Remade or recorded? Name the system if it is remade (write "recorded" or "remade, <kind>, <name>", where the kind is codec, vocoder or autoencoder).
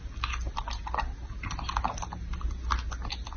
recorded